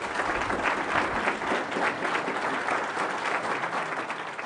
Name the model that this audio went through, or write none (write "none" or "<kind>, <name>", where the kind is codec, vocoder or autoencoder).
none